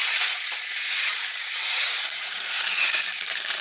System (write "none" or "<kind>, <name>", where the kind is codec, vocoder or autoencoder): vocoder, Vocos